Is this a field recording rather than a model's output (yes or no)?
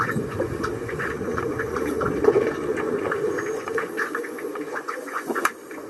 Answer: no